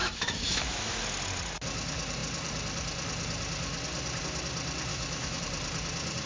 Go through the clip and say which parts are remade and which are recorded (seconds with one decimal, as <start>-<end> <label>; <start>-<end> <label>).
0.0-1.0 remade; 1.0-4.9 recorded; 4.9-5.4 remade; 5.4-6.3 recorded